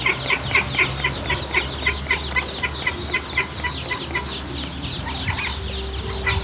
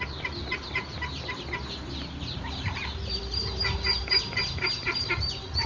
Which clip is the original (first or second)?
first